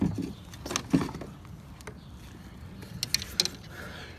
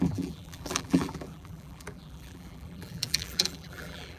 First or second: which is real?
first